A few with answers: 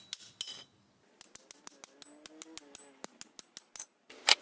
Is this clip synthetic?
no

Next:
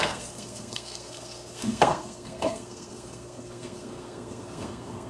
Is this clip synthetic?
yes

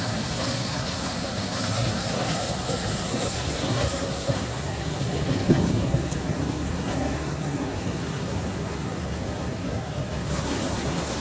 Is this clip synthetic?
yes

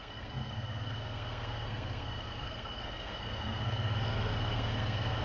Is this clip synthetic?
yes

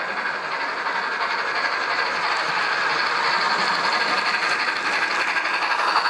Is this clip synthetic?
no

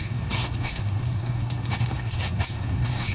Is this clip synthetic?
yes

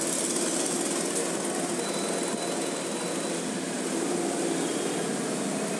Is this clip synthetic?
no